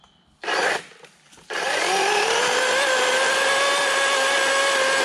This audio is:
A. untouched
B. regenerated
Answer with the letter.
A